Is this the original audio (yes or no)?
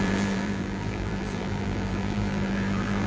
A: no